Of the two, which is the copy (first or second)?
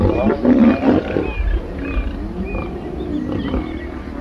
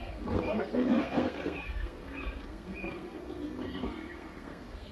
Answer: second